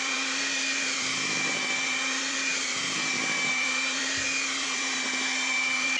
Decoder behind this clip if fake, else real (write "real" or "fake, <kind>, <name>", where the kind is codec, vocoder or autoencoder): fake, vocoder, BigVGAN v2